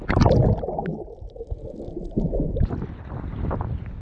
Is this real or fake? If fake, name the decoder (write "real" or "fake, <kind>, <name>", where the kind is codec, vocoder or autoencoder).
real